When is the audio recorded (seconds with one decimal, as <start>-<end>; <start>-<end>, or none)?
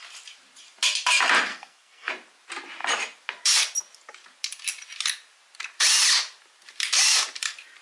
0.0-1.5; 2.1-7.8